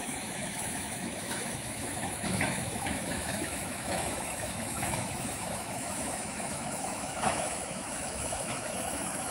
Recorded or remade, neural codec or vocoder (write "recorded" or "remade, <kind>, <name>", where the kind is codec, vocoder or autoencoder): remade, autoencoder, DAC-VAE